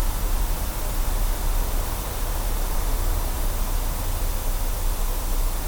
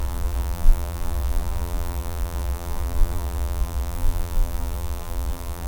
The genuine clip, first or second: first